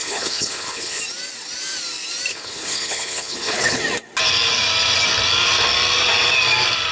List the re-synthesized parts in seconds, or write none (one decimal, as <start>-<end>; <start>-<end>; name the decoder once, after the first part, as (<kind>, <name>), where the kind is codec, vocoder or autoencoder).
0.0-1.0 (codec, HILCodec); 2.3-3.8